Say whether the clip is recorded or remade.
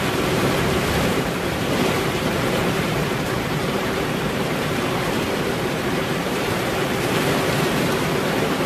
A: remade